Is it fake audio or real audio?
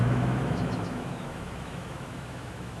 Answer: fake